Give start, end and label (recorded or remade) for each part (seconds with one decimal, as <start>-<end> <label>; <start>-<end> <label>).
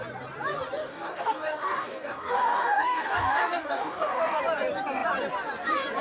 0.0-0.8 recorded; 0.8-4.4 remade; 4.4-6.0 recorded